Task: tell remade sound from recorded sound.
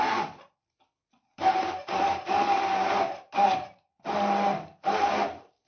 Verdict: recorded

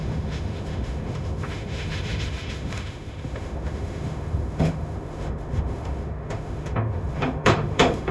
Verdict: remade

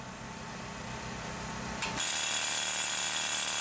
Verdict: recorded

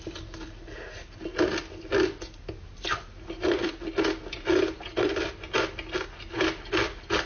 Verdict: recorded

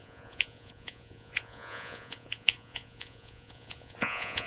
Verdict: remade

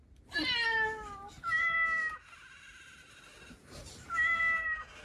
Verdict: recorded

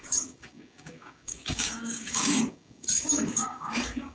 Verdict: remade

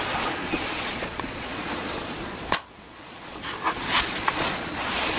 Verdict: remade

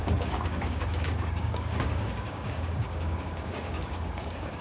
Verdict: remade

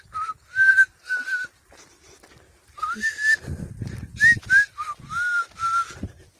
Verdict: recorded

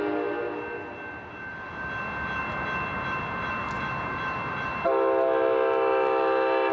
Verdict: recorded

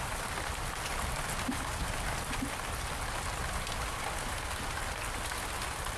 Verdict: recorded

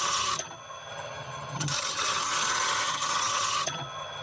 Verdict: remade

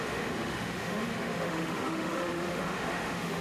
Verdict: remade